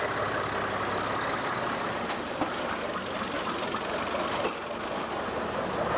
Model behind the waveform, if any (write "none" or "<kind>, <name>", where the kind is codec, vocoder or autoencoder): none